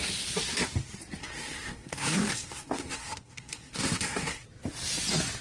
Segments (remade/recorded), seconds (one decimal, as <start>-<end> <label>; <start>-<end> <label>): 0.0-1.2 recorded; 1.2-4.4 remade; 4.4-5.4 recorded